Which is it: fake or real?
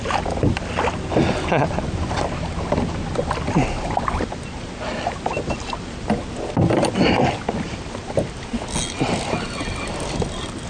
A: real